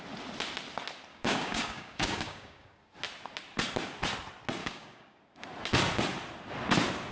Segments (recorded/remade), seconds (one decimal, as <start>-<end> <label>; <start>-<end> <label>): 0.0-1.1 recorded; 1.1-2.9 remade; 2.9-4.6 recorded; 4.6-5.2 remade; 5.2-7.1 recorded